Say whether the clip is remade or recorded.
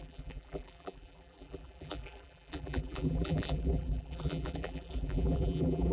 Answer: remade